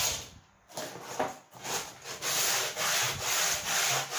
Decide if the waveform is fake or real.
real